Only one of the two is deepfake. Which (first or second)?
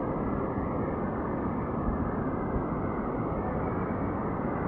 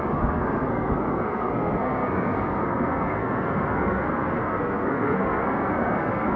second